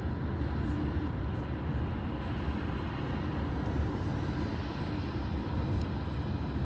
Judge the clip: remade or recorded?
recorded